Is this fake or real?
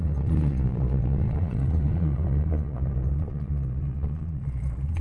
fake